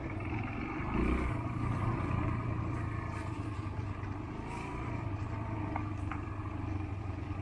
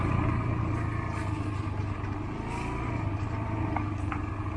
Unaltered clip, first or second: second